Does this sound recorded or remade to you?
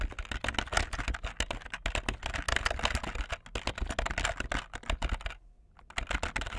recorded